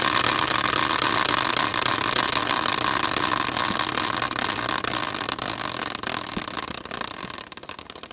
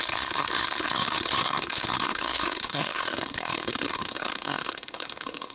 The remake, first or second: second